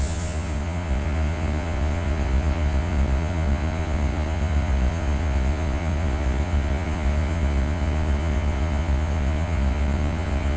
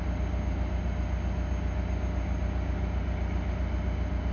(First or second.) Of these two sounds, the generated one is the first